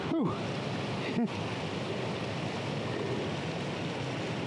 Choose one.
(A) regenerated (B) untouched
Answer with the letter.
B